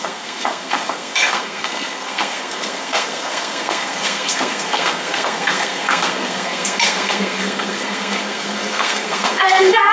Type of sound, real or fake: fake